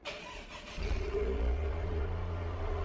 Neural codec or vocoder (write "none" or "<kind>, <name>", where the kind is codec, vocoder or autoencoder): vocoder, Vocos